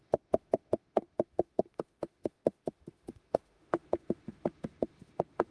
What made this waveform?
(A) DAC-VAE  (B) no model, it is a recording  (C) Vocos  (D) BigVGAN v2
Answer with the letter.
A